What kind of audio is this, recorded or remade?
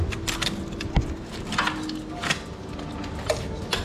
recorded